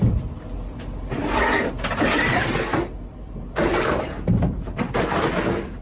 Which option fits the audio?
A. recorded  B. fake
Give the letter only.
A